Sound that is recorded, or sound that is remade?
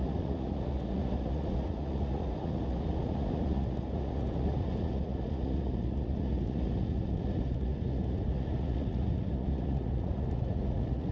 remade